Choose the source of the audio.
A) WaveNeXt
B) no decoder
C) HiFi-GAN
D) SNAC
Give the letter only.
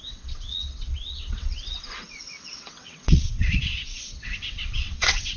A